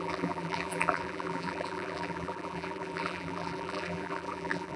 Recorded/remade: remade